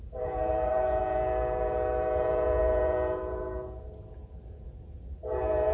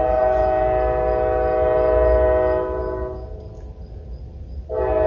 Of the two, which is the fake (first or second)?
first